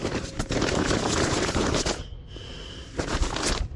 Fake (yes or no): no